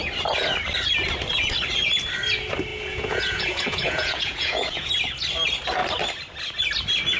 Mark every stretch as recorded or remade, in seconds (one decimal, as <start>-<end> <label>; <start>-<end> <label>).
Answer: 0.0-2.7 recorded; 2.7-4.9 remade; 4.9-7.2 recorded